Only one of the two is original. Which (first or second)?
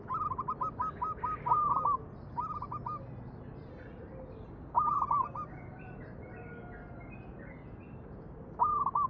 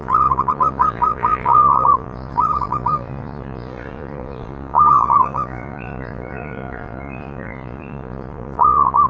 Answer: first